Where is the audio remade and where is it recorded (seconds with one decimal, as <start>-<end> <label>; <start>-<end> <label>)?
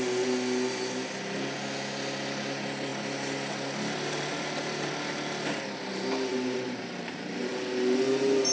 0.0-6.3 recorded; 6.3-7.3 remade; 7.3-8.5 recorded